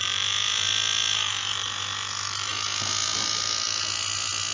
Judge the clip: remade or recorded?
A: recorded